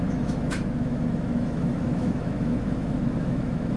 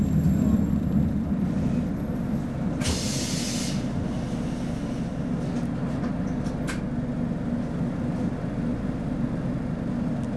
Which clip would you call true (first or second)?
second